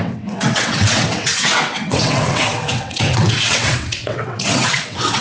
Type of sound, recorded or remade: remade